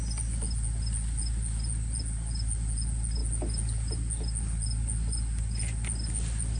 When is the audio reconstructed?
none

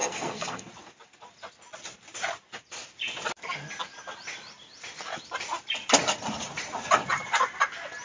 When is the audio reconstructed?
0.0-0.7 (codec, SNAC)

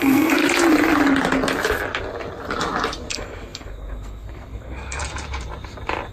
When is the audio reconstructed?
0.0-0.4 (codec, SNAC); 3.1-5.0